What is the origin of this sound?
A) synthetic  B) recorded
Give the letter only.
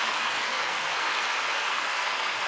A